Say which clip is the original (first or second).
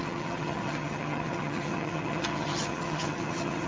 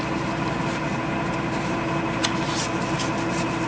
second